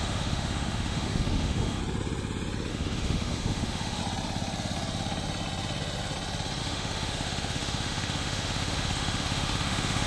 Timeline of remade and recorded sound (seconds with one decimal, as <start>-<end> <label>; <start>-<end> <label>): 0.0-1.8 remade; 1.8-2.7 recorded; 2.7-4.0 remade; 4.0-6.6 recorded; 6.6-10.1 remade